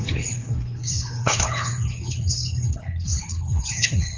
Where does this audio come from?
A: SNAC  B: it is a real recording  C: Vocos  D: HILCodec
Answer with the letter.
D